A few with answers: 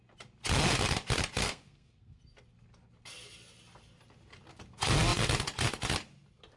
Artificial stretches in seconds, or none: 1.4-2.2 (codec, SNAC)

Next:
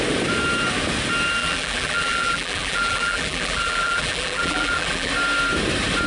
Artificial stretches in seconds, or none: 1.4-5.1 (vocoder, BigVGAN v2)